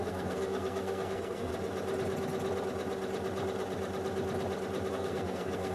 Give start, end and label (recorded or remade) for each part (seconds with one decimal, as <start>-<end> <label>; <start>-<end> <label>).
0.0-1.5 remade; 1.5-4.9 recorded; 4.9-5.7 remade